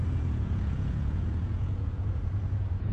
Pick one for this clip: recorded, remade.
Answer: remade